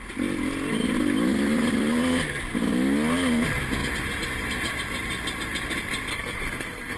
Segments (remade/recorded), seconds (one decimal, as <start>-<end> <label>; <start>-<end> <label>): 0.0-6.1 recorded; 6.1-7.0 remade